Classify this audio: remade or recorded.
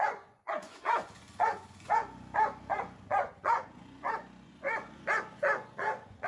remade